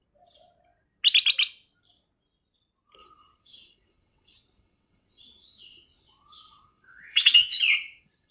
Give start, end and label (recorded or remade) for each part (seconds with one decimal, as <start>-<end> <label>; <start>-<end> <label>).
0.0-3.0 recorded; 3.0-8.3 remade